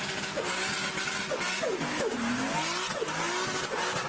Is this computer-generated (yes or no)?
no